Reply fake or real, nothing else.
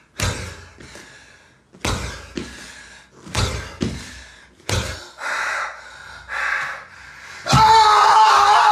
real